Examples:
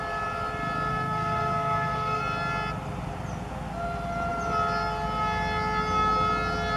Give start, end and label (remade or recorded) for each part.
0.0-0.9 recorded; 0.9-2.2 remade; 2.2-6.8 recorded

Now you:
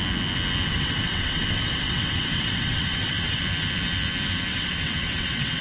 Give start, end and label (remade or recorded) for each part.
0.0-0.7 recorded; 0.7-3.4 remade; 3.4-4.5 recorded; 4.5-5.6 remade